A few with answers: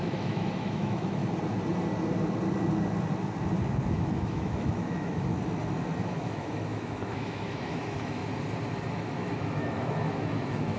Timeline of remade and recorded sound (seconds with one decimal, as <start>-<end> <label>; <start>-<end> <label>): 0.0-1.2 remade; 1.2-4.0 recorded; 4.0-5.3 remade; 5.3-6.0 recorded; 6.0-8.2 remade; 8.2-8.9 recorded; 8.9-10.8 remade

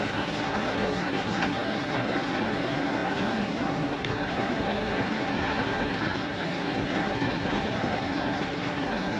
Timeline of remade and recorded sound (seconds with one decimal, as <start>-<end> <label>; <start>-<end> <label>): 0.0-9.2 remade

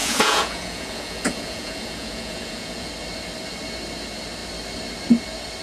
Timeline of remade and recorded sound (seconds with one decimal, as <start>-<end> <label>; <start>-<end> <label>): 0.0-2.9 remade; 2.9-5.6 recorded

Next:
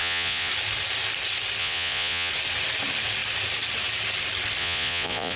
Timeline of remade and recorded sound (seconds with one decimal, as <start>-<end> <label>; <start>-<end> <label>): 0.0-0.5 remade; 0.5-1.6 recorded; 1.6-2.3 remade; 2.3-4.6 recorded; 4.6-5.4 remade

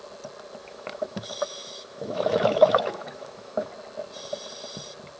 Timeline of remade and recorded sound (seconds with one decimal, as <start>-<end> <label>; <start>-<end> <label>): 0.0-0.6 recorded; 0.6-3.7 remade; 3.7-5.2 recorded